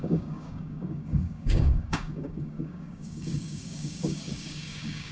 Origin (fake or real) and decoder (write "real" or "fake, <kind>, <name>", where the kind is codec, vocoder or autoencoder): fake, codec, DAC